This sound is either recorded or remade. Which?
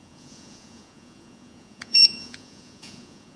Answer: remade